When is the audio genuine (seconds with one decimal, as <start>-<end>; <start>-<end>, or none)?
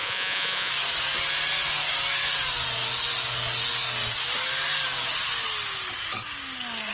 0.7-6.9